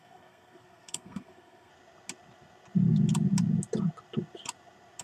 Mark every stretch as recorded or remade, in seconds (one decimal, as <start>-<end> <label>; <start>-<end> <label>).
0.0-1.7 remade; 1.7-5.0 recorded